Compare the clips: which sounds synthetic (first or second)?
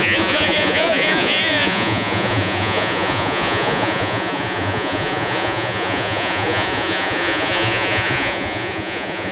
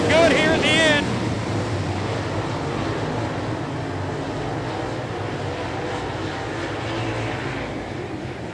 first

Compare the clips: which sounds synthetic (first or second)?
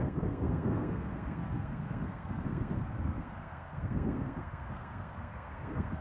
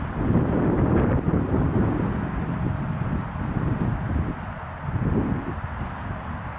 first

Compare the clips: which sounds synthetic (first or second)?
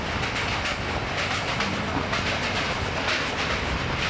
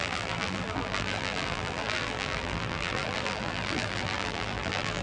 second